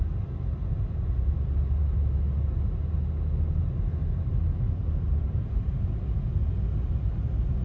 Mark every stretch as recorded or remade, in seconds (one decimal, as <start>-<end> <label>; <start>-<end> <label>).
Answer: 0.0-4.0 recorded; 4.0-5.6 remade; 5.6-7.6 recorded